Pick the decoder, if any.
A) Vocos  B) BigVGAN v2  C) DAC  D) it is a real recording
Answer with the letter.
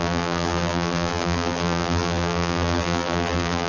B